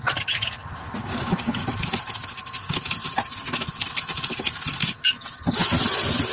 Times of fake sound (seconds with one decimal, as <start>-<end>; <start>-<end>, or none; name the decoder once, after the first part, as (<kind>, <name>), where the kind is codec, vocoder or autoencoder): 1.0-1.7 (codec, DAC)